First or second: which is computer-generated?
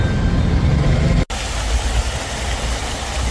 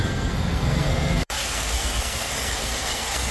second